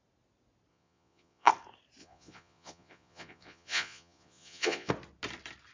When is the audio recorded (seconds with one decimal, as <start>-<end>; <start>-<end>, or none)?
0.0-0.7; 1.5-2.0; 4.9-5.7